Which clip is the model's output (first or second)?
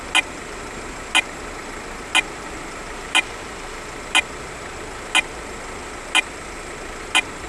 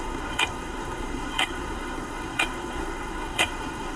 second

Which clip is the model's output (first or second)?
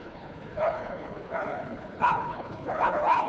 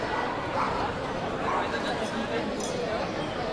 first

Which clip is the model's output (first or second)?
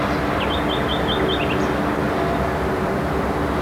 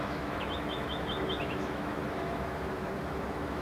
second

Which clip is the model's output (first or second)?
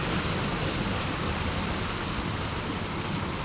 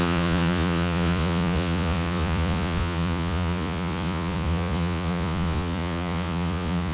second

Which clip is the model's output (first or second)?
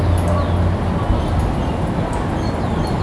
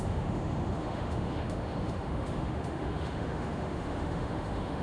second